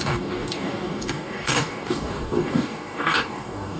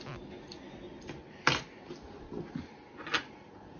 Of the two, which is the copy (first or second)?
first